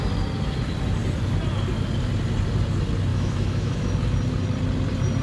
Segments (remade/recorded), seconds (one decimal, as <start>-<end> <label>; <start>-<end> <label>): 0.0-3.1 recorded; 3.1-3.9 remade; 3.9-5.2 recorded